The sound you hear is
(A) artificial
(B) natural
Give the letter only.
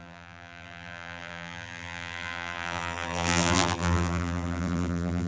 A